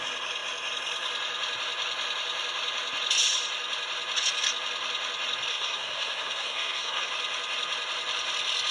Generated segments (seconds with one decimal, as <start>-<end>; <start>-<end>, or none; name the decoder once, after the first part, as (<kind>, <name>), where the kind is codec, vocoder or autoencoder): 5.5-7.1 (codec, SNAC)